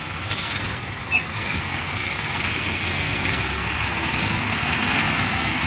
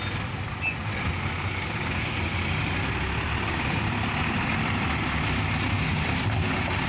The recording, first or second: second